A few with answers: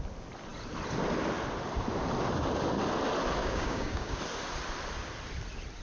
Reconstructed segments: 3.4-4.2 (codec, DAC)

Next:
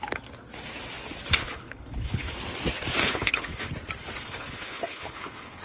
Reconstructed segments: 1.4-2.3 (codec, HILCodec); 3.0-3.7; 4.2-5.6

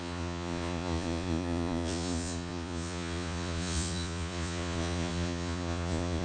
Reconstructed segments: 0.0-6.2 (vocoder, Vocos)

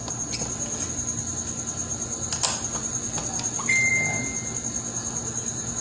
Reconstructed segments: none

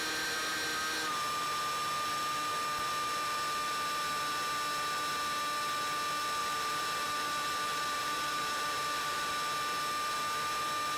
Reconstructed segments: 6.4-9.3 (vocoder, BigVGAN v2)

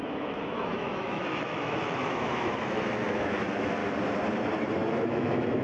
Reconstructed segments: 0.0-3.8 (autoencoder, DAC-VAE); 4.9-5.6